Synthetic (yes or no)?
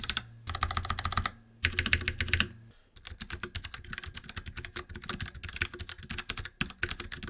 no